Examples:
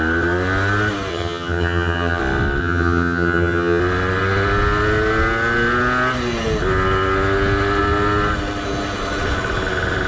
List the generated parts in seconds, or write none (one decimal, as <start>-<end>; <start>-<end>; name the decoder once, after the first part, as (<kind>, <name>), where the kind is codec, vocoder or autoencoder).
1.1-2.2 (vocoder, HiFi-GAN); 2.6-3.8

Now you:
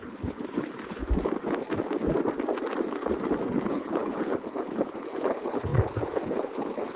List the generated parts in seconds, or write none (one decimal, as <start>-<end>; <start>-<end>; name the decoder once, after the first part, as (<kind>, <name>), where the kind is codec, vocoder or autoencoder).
0.0-1.0 (codec, HILCodec); 3.5-7.0

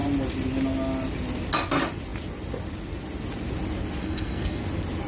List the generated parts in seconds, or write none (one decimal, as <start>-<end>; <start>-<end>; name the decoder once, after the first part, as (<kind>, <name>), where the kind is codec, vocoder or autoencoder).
4.0-4.6 (codec, SNAC)

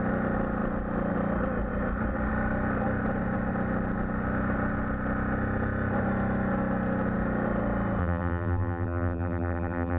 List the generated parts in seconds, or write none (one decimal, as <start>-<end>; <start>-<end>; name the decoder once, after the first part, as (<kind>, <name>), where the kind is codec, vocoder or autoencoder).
8.0-10.0 (vocoder, BigVGAN v2)

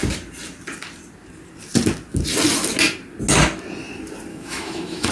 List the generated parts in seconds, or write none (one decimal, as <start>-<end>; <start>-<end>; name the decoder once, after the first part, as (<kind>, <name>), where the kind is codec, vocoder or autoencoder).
4.3-5.1 (autoencoder, DAC-VAE)

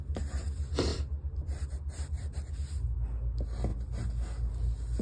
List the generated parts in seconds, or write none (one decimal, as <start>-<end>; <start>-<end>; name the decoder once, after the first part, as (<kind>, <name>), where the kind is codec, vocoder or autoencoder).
0.9-2.5 (vocoder, BigVGAN v2)

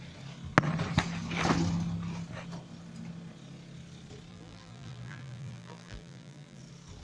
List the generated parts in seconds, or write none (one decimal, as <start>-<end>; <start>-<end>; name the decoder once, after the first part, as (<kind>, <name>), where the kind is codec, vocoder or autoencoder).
4.3-6.6 (vocoder, BigVGAN v2)